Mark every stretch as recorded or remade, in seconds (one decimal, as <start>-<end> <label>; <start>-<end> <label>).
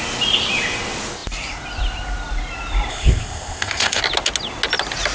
0.0-2.9 recorded; 2.9-4.0 remade; 4.0-5.1 recorded